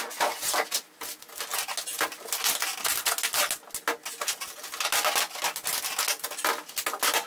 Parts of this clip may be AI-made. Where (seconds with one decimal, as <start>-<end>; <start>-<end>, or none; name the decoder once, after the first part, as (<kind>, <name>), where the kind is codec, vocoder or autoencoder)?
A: none